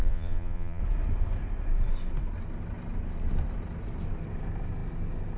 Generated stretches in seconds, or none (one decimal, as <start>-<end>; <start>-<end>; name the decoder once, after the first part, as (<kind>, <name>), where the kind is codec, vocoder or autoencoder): 0.0-0.8 (vocoder, Vocos)

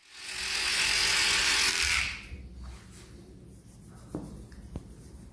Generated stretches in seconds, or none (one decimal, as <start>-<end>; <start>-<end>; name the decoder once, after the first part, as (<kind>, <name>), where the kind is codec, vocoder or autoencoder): 0.0-1.7 (vocoder, Vocos)

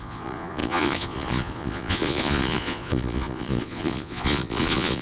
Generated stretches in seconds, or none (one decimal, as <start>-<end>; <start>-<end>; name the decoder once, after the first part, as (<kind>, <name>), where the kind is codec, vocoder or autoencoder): 0.0-5.0 (vocoder, Vocos)

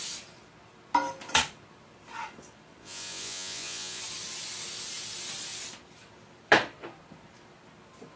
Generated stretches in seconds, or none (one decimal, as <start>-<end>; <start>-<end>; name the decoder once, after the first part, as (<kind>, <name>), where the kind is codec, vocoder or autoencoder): 2.8-4.0 (vocoder, Vocos)